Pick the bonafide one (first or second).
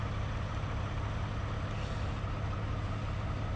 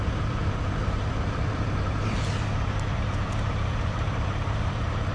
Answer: first